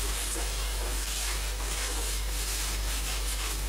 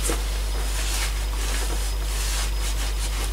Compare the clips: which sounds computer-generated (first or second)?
first